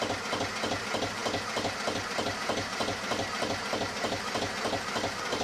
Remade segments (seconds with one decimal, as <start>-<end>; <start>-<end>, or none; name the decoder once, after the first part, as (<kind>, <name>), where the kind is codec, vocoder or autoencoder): none